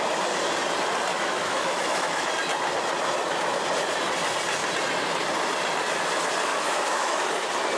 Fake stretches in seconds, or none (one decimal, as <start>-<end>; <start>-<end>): 1.1-2.3; 6.5-7.2